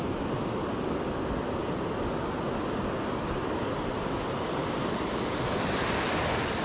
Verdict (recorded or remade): recorded